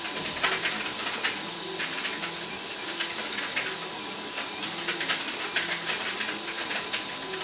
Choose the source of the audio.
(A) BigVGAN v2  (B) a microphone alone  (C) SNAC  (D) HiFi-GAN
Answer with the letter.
B